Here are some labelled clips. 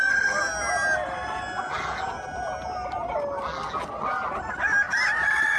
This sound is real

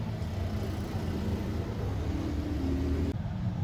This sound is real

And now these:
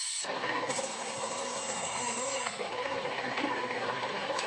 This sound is fake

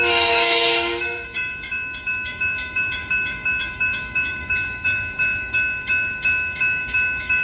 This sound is fake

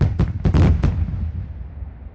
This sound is real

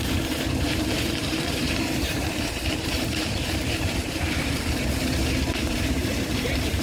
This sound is fake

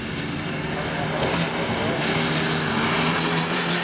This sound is real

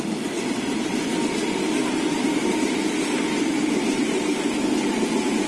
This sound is real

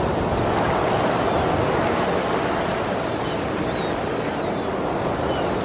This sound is real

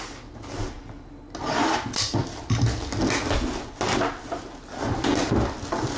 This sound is real